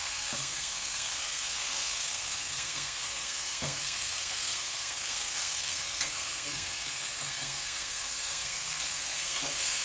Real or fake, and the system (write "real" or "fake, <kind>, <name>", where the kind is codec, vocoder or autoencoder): fake, codec, SNAC